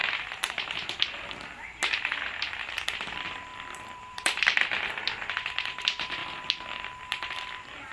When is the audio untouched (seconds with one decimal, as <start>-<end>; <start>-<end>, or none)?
0.0-2.7; 6.2-7.0